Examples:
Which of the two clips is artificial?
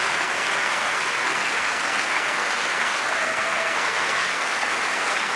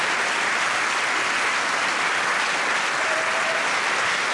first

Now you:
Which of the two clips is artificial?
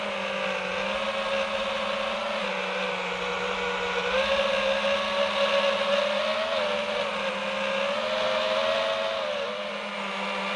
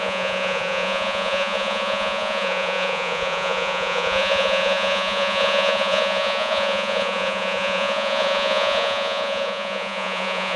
second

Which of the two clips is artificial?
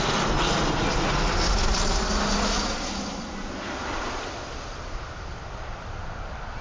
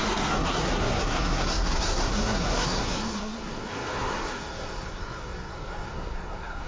second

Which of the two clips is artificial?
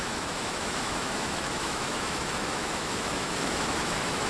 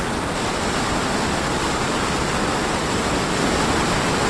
first